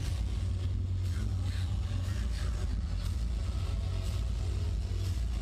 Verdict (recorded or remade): recorded